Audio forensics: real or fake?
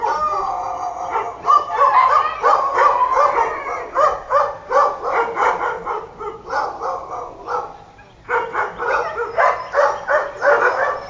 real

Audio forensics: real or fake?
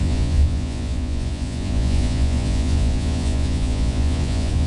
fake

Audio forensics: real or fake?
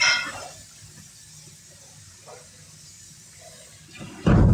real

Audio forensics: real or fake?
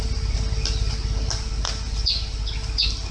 real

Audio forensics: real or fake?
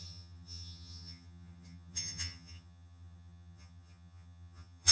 fake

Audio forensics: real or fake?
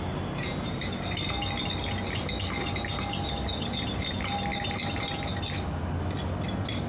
real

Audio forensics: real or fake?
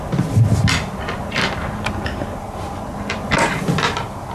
real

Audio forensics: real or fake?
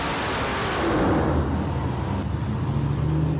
real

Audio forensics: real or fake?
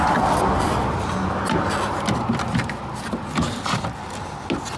real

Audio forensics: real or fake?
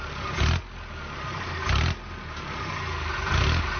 real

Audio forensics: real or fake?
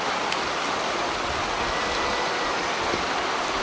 real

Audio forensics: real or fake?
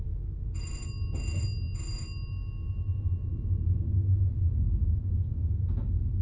real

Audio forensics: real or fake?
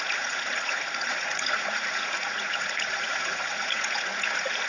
fake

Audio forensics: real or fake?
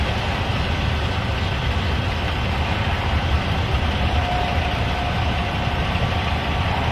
real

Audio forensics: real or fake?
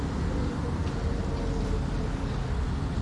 real